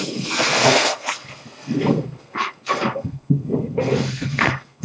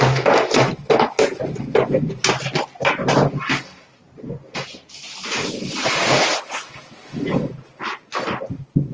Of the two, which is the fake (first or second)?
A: first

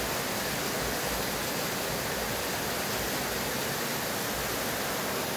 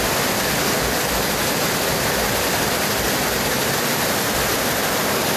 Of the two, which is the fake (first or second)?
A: second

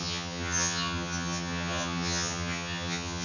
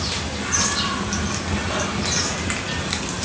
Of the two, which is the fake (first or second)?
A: first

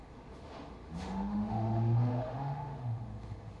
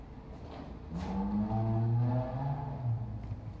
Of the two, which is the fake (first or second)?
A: first